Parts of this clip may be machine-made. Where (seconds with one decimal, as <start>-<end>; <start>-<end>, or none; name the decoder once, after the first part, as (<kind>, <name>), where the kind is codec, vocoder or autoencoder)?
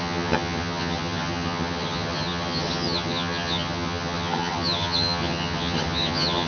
0.0-6.5 (vocoder, HiFi-GAN)